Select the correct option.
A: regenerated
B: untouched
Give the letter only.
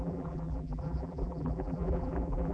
A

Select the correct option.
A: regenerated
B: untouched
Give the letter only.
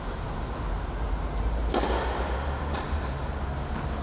B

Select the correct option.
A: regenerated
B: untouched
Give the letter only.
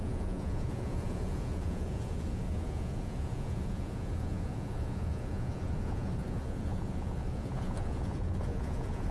A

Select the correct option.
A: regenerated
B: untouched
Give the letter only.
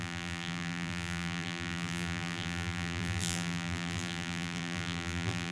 A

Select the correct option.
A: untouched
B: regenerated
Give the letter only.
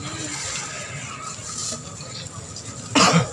A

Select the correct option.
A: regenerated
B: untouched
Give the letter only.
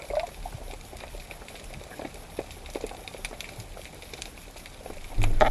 B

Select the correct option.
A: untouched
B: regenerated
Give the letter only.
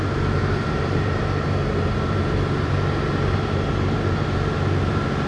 B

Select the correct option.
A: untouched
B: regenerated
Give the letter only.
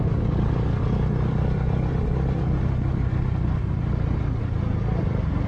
A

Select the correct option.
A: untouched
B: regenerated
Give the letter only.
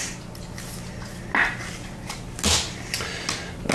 A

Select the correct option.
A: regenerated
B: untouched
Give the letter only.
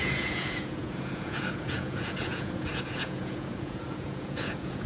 A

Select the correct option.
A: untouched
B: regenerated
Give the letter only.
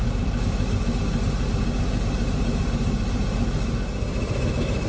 A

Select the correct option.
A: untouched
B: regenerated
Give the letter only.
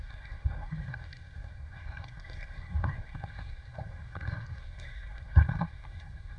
B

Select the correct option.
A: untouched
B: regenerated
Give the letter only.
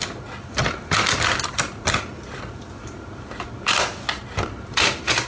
A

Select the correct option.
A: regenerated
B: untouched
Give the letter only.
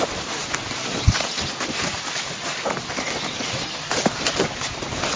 B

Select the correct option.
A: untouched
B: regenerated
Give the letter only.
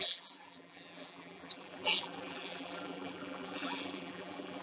B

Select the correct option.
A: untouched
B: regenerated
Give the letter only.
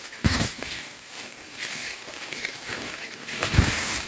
B